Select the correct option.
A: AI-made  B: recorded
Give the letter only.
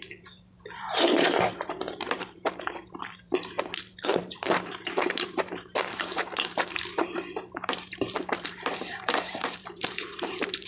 A